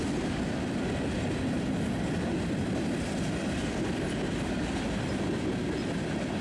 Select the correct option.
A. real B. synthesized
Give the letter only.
A